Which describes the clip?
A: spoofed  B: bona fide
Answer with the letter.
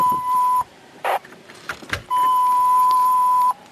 A